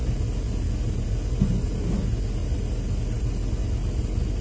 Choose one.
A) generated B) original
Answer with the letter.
B